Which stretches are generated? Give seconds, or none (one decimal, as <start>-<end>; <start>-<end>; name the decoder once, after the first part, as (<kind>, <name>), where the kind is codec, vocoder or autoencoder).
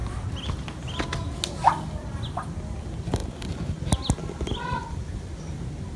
none